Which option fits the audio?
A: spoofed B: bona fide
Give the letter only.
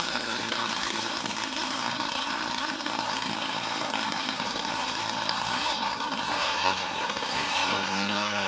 A